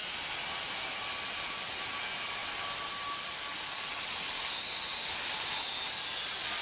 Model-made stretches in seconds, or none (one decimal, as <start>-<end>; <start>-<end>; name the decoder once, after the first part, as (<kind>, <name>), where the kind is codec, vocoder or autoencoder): none